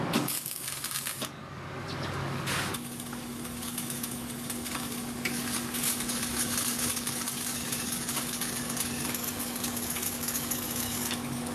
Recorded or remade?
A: remade